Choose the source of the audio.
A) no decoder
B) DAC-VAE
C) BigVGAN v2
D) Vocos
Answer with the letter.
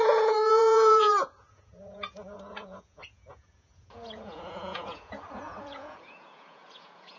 D